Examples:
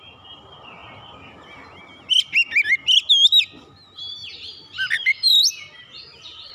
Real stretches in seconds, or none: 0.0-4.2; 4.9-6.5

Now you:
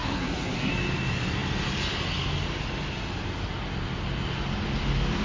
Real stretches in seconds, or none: 0.7-5.2

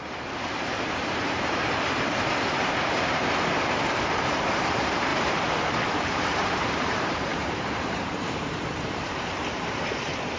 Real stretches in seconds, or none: 5.1-6.1

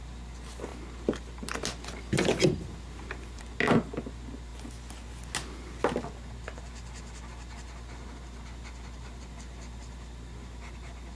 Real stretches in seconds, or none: 0.0-11.2

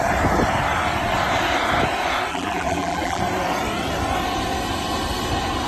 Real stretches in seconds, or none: 0.0-2.3; 3.2-5.7

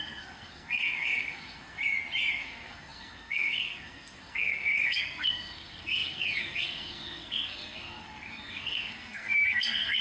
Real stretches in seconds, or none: 1.8-2.3

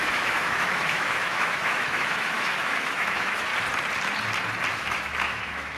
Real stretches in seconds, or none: 3.5-4.7

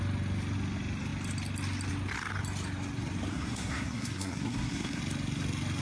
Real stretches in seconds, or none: 0.0-3.3; 5.0-5.8